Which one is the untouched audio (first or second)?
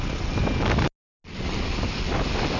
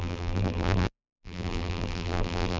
first